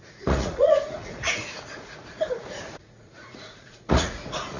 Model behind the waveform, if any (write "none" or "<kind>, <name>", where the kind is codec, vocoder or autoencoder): vocoder, Vocos